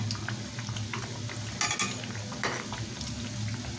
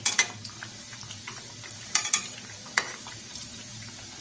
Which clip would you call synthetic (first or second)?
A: second